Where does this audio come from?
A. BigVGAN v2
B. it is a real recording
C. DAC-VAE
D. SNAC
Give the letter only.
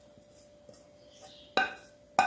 B